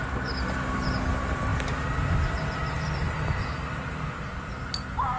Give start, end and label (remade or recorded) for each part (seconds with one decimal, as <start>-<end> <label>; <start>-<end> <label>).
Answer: 0.0-5.2 recorded